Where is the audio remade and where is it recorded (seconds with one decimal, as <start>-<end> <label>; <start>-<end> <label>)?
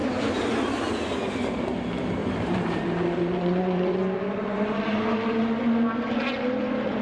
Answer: 0.0-2.2 recorded; 2.2-4.0 remade; 4.0-7.0 recorded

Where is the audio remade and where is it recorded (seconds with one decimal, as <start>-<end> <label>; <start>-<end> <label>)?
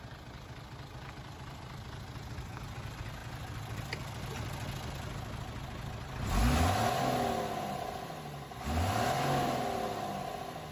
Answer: 0.0-10.7 recorded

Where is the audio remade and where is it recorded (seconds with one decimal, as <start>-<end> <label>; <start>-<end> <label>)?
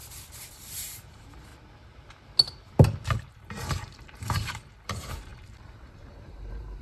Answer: 0.0-0.5 recorded; 0.5-1.5 remade; 1.5-3.3 recorded; 3.3-6.8 remade